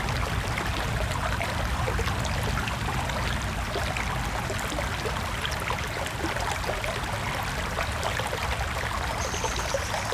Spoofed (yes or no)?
no